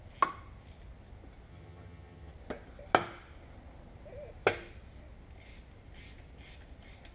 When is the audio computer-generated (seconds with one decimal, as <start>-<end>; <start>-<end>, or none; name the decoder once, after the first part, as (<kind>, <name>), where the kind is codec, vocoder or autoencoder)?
1.5-2.3 (vocoder, HiFi-GAN)